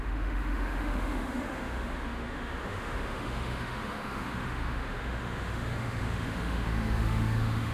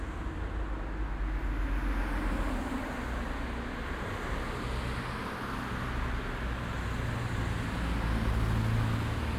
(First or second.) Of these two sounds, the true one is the second